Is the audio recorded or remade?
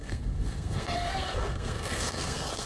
remade